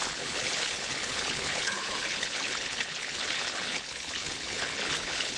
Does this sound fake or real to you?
fake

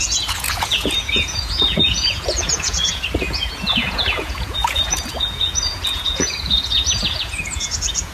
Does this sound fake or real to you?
fake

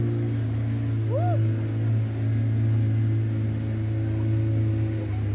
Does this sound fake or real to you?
real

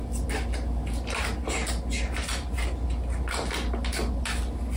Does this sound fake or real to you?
real